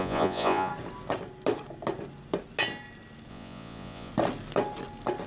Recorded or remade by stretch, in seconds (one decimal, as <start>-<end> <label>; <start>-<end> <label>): 0.0-0.7 remade; 0.7-3.3 recorded; 3.3-4.1 remade; 4.1-5.3 recorded